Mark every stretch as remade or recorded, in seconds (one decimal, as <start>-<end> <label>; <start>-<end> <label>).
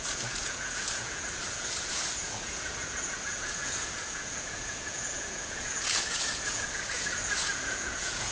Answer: 0.0-8.3 remade